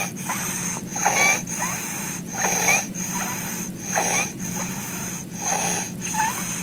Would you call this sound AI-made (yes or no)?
no